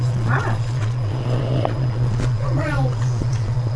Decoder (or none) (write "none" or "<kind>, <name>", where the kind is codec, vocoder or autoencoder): vocoder, Vocos